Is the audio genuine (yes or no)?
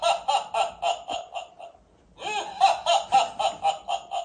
yes